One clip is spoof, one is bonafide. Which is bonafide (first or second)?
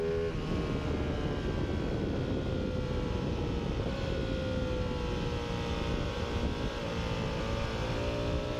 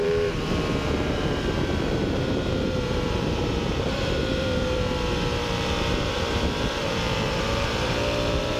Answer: first